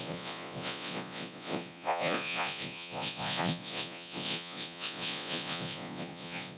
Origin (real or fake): fake